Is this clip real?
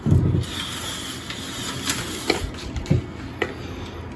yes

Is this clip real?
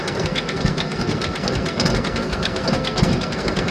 no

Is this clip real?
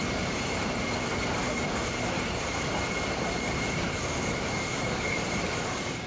no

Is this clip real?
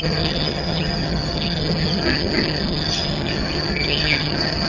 no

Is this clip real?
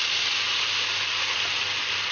yes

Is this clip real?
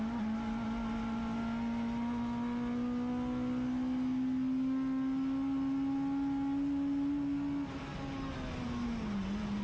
yes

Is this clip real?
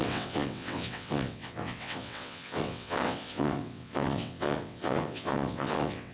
no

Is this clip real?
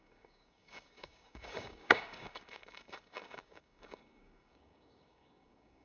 no